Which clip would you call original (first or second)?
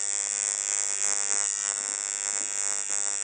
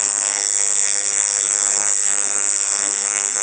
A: first